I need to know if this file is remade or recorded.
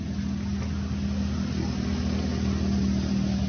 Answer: recorded